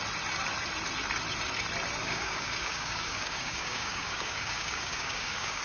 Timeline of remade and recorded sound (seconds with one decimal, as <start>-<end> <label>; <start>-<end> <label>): 0.0-2.0 recorded; 2.0-5.6 remade